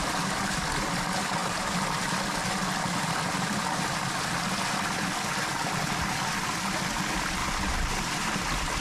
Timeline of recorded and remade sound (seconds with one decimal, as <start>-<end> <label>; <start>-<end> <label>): 0.0-1.4 recorded; 1.4-2.0 remade; 2.0-7.4 recorded; 7.4-8.4 remade; 8.4-8.8 recorded